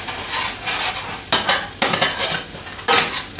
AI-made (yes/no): no